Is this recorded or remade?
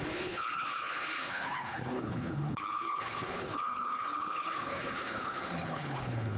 remade